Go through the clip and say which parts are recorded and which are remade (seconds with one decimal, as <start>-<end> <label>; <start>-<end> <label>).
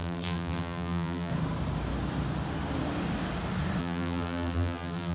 0.0-1.3 remade; 1.3-3.8 recorded; 3.8-5.1 remade